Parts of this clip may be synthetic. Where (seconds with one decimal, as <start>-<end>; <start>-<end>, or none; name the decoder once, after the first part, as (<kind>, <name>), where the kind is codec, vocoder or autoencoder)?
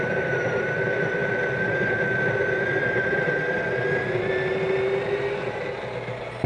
none